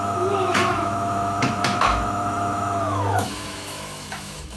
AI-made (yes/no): yes